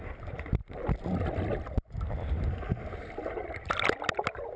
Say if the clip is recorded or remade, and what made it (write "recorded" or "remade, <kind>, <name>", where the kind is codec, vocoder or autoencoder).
recorded